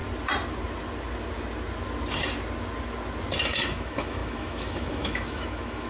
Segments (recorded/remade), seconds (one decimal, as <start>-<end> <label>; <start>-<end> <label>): 0.0-3.5 recorded; 3.5-5.9 remade